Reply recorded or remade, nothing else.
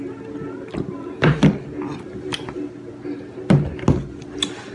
recorded